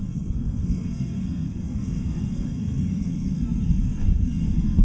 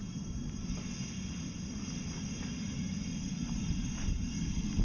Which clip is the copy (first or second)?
first